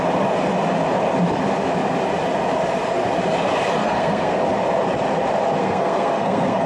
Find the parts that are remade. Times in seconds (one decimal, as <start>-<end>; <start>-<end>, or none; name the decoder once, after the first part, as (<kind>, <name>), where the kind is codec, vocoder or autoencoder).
3.8-4.4 (codec, SNAC); 5.6-6.7